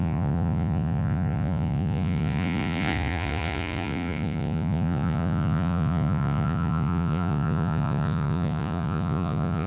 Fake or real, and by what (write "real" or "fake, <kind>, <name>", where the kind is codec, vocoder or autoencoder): fake, vocoder, Vocos